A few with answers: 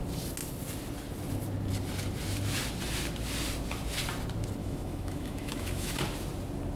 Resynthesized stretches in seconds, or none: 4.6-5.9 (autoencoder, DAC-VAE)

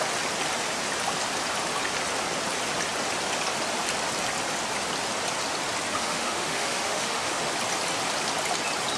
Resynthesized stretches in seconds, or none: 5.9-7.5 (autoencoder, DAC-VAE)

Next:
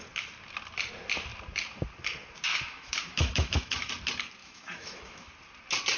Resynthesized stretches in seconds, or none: 2.5-3.9 (autoencoder, DAC-VAE); 4.4-5.3